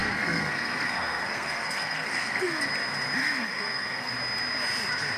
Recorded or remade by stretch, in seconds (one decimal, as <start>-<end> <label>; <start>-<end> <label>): 0.0-2.6 remade; 2.6-3.2 recorded; 3.2-4.1 remade; 4.1-5.2 recorded